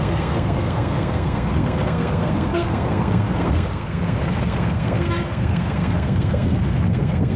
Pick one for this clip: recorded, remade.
remade